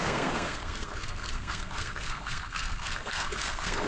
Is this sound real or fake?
fake